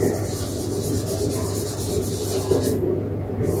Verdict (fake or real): real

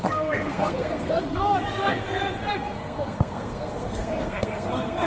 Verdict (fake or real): fake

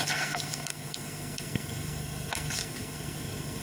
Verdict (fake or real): fake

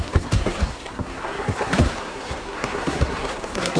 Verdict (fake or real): fake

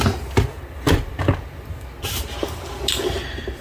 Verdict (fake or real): real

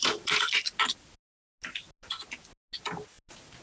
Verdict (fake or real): real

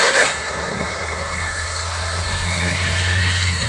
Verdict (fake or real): fake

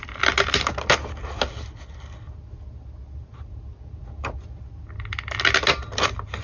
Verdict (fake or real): real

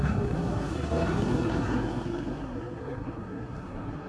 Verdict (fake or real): fake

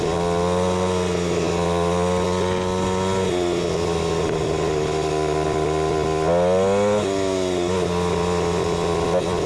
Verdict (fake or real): real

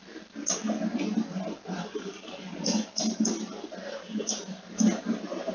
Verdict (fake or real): real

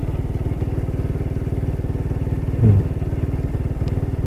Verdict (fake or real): real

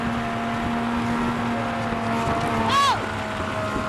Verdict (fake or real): real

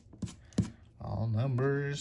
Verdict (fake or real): real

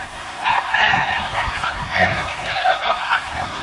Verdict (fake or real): fake